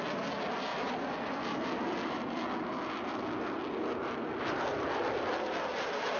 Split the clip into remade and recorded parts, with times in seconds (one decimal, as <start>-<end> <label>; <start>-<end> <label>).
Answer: 0.0-6.2 recorded